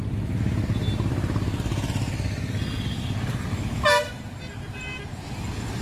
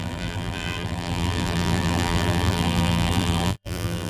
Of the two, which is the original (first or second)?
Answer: first